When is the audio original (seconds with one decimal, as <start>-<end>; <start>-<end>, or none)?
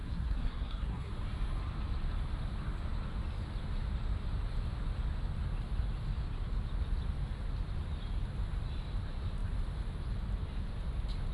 1.1-11.3